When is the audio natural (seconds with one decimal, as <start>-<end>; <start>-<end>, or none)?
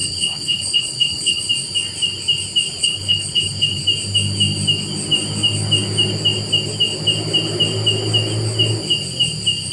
1.5-2.8; 3.8-9.7